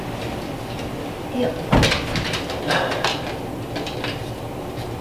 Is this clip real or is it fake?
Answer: fake